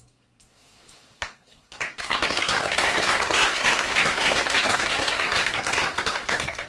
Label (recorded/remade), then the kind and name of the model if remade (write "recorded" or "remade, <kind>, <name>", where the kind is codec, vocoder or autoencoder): remade, codec, SNAC